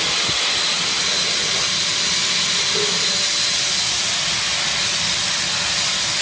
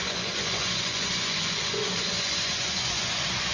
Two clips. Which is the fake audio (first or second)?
second